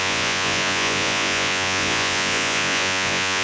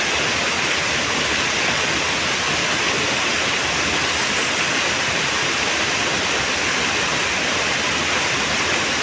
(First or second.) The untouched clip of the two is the second